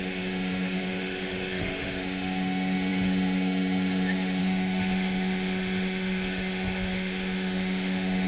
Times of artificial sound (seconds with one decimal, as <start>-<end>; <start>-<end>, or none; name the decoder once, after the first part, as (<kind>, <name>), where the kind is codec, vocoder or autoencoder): 0.0-8.3 (autoencoder, DAC-VAE)